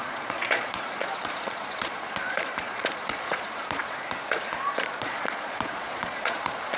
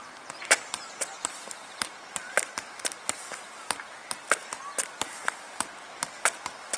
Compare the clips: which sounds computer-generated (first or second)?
first